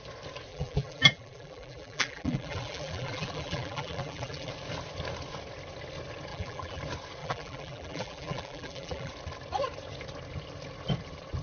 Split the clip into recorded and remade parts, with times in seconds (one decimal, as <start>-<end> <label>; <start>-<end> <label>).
0.0-0.5 recorded; 0.5-4.5 remade; 4.5-6.3 recorded; 6.3-6.8 remade; 6.8-7.2 recorded; 7.2-9.1 remade; 9.1-11.4 recorded

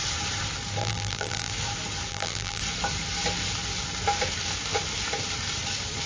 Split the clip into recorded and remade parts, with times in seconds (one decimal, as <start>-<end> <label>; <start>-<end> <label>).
0.0-0.8 recorded; 0.8-1.5 remade; 1.5-2.1 recorded; 2.1-2.6 remade; 2.6-6.1 recorded

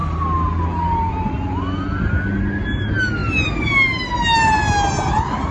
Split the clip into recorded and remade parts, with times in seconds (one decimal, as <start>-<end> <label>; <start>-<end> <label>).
0.0-5.5 recorded